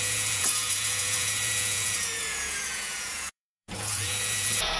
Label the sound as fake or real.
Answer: fake